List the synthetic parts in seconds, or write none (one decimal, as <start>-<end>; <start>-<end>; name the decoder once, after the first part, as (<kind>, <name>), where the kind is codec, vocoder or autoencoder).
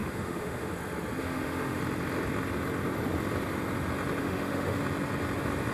0.0-0.7 (autoencoder, DAC-VAE); 1.2-1.8; 4.2-4.8